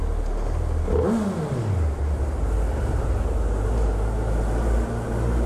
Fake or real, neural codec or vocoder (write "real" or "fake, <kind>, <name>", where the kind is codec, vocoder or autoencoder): real